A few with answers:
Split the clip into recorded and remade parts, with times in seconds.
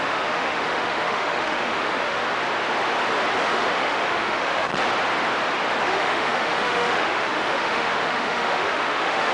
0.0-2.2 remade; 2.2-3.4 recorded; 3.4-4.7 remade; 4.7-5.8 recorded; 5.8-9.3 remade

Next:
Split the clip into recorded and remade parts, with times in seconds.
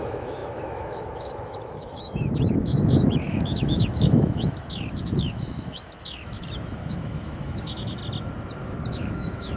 0.0-8.0 remade; 8.0-8.9 recorded; 8.9-9.6 remade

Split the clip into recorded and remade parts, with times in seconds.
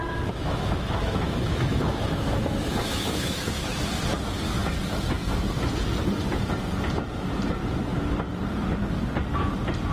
0.0-3.9 remade; 3.9-9.9 recorded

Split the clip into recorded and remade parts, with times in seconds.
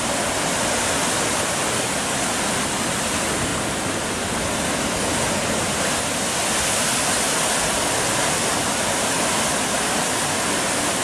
0.0-11.0 recorded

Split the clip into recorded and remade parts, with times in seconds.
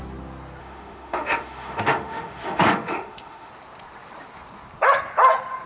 0.0-0.6 recorded; 0.6-3.5 remade; 3.5-5.7 recorded